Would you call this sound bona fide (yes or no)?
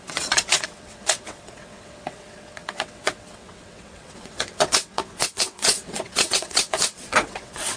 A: no